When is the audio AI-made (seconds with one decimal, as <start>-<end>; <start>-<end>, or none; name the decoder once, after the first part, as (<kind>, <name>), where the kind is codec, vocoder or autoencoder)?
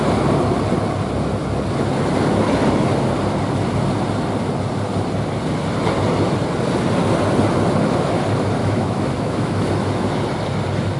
8.6-10.2 (autoencoder, DAC-VAE)